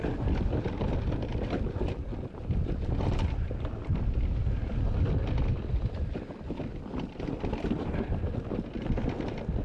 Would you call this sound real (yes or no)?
yes